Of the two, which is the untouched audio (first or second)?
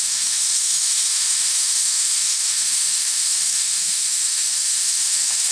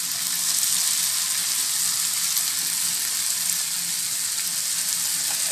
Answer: second